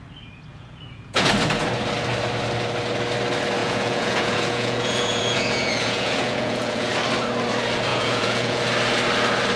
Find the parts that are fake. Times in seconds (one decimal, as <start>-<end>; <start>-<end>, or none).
0.5-1.3; 3.6-6.9; 7.9-8.6